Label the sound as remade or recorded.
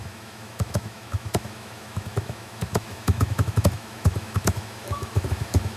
remade